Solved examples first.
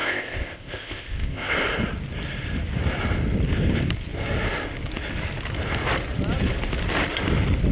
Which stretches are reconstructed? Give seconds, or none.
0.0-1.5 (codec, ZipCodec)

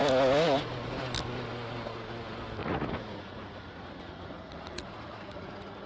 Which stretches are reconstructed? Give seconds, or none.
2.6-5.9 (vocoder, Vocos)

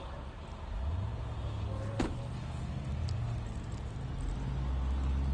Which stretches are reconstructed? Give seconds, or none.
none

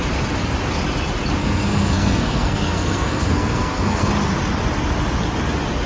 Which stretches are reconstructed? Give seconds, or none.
1.4-4.1 (codec, SNAC)

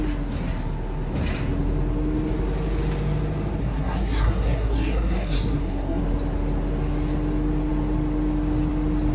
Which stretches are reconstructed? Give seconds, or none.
3.6-6.0 (codec, SNAC)